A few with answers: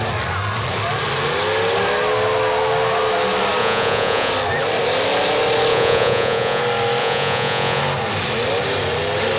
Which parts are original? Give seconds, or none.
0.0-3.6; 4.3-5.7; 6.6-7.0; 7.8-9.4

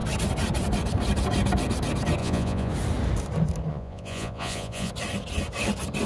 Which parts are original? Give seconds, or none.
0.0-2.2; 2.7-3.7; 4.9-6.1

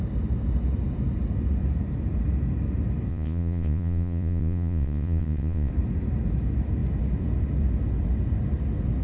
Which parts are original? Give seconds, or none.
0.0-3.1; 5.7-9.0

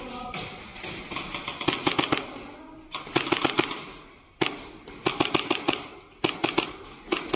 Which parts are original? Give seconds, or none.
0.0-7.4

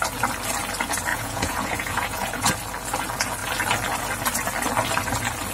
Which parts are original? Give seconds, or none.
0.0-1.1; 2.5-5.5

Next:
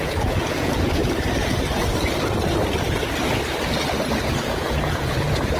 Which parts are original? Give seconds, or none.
1.0-4.4

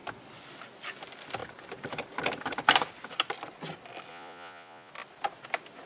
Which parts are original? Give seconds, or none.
0.0-4.1; 4.9-5.9